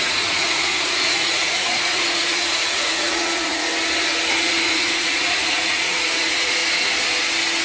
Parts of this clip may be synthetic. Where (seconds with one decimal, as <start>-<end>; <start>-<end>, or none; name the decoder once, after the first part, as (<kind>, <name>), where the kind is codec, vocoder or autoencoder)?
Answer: 0.0-3.7 (vocoder, Vocos); 4.4-6.6